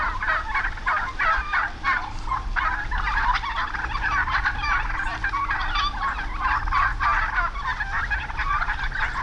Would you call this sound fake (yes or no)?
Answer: no